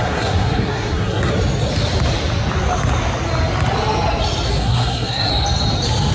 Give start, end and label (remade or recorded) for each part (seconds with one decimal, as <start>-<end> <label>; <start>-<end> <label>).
0.0-1.3 remade; 1.3-4.6 recorded; 4.6-5.3 remade; 5.3-6.1 recorded